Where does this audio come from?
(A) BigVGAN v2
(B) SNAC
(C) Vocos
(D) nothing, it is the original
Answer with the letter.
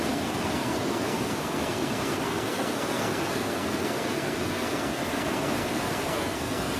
B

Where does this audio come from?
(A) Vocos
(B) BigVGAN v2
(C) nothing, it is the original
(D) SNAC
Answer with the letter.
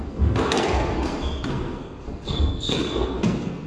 D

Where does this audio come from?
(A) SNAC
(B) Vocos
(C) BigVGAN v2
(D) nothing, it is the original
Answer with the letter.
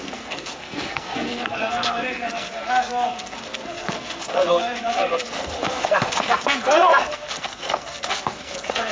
A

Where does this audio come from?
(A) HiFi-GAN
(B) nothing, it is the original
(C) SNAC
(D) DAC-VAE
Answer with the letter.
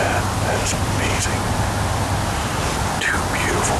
B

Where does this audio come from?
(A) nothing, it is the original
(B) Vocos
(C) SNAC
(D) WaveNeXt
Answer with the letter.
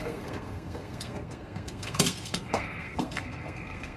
C